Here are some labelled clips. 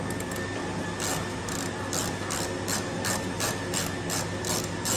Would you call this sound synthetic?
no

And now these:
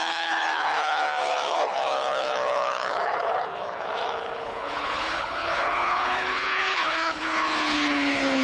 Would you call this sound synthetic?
yes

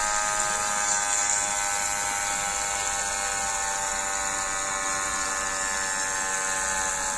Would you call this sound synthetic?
no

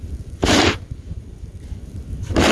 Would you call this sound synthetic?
no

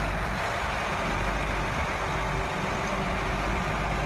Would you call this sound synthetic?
no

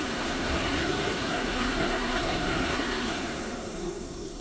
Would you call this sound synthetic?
yes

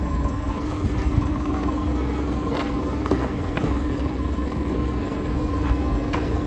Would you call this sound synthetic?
yes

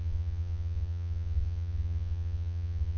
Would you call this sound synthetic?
yes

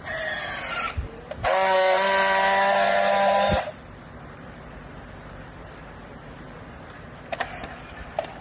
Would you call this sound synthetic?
no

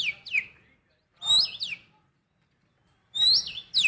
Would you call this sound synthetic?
no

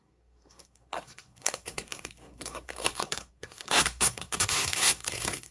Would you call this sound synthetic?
yes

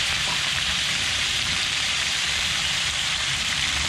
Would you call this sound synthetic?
yes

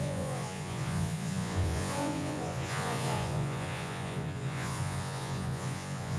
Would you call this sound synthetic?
yes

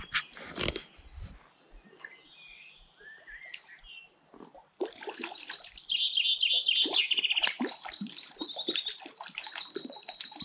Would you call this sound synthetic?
no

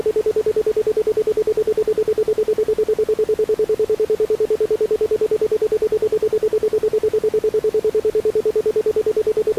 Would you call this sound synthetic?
no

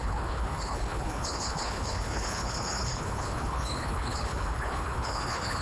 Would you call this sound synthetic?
yes